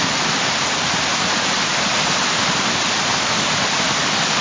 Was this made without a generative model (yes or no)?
yes